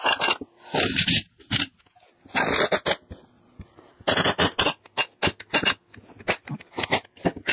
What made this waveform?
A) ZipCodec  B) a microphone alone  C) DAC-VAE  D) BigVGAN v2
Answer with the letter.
B